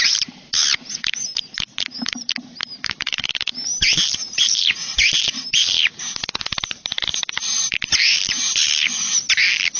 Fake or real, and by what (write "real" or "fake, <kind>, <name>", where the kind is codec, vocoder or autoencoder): fake, vocoder, BigVGAN v2